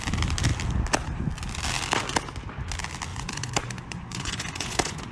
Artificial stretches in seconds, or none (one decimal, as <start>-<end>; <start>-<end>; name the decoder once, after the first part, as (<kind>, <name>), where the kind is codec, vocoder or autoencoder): 3.1-5.1 (vocoder, Vocos)